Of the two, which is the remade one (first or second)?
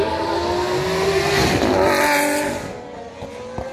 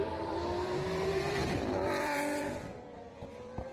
second